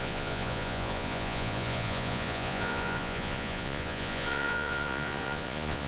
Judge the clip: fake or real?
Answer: fake